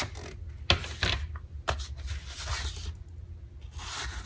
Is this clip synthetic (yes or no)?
no